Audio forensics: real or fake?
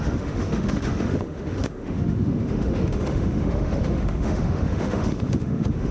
fake